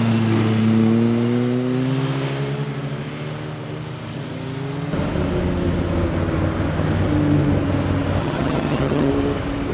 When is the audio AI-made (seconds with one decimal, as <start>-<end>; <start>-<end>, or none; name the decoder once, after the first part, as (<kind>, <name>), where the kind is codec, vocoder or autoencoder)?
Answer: 8.2-9.1 (vocoder, HiFi-GAN)